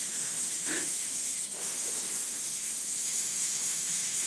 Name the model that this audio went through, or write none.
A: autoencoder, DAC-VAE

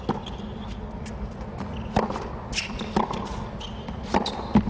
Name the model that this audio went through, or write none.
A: none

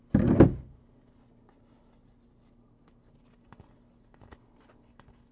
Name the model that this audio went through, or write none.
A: none